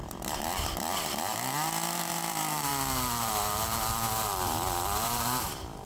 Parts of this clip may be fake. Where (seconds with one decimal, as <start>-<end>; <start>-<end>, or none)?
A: 0.0-2.7; 3.2-5.9